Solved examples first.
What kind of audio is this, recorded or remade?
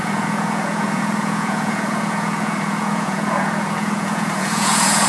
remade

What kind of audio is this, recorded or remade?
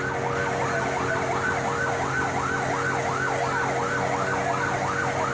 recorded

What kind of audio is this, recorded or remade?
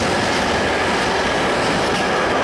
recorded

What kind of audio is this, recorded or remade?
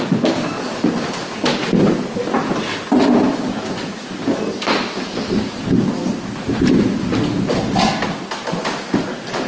recorded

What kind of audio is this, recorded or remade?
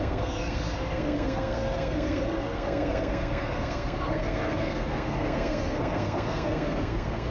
remade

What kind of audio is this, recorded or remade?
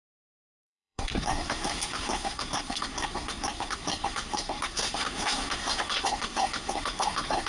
remade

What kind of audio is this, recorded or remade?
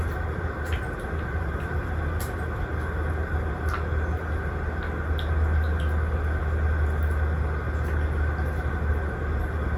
recorded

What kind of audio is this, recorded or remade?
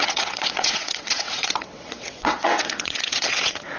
remade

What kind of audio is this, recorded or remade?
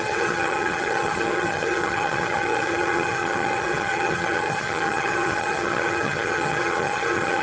remade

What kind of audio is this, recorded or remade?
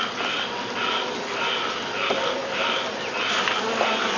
recorded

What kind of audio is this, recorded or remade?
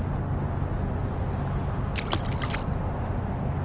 recorded